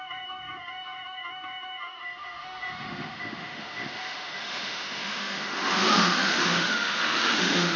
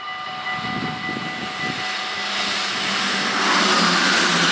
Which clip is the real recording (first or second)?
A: second